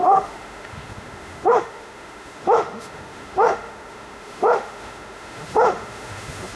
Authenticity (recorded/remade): remade